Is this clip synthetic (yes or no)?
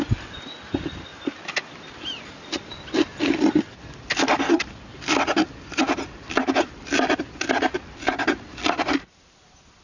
no